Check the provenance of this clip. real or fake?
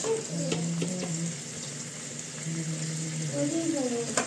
real